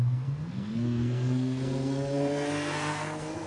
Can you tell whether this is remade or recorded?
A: remade